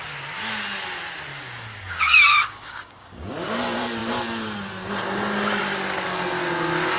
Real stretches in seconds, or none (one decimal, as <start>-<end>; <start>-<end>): 0.0-1.3; 3.3-7.0